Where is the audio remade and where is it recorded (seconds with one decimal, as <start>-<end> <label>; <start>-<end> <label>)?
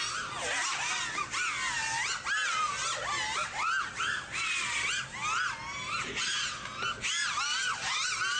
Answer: 0.0-8.4 recorded